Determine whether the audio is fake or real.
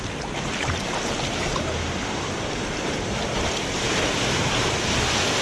real